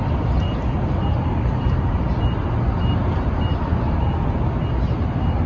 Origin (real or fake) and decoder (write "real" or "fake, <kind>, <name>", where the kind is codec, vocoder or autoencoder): real